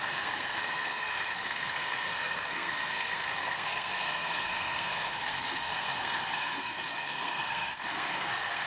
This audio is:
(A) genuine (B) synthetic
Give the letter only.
B